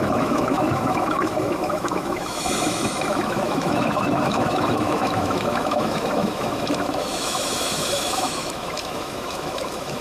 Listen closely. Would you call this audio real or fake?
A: fake